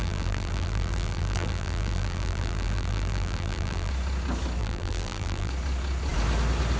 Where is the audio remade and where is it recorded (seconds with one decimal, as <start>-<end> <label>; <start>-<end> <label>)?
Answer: 0.0-3.9 remade; 3.9-4.6 recorded; 4.6-5.5 remade; 5.5-6.8 recorded